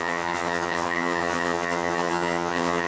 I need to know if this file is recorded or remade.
remade